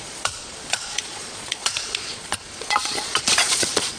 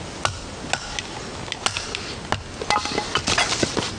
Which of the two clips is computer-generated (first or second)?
first